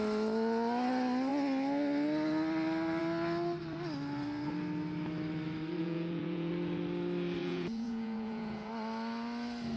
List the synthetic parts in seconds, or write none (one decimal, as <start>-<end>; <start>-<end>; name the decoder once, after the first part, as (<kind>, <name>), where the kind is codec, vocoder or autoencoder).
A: 5.8-6.5 (vocoder, Vocos); 7.4-8.7